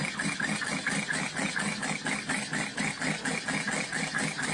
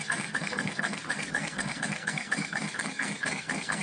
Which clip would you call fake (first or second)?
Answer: second